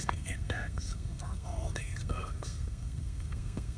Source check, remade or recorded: remade